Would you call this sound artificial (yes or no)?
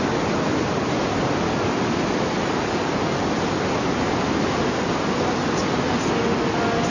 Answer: no